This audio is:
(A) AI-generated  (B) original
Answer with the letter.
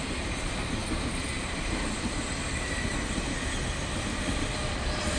B